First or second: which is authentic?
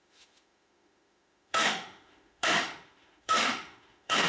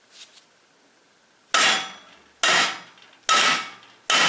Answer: second